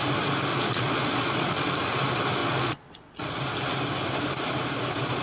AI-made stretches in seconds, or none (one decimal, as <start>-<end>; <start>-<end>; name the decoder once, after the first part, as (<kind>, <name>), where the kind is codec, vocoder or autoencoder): 0.5-1.7 (vocoder, Vocos); 2.4-3.4